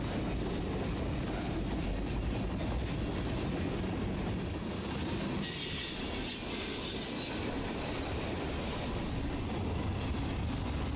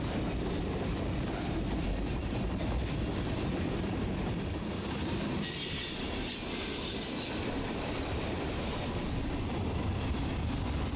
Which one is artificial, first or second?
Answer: second